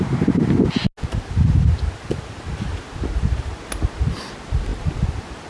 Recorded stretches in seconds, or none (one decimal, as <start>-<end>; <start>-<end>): 0.0-5.5